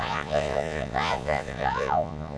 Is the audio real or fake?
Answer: fake